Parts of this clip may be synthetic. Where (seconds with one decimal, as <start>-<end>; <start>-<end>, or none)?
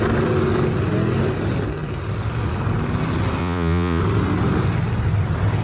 3.4-4.0